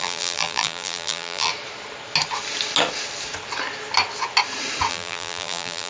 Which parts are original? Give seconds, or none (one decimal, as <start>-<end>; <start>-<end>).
1.5-4.9